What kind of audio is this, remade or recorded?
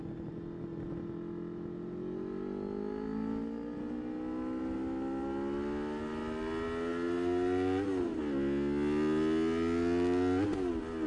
recorded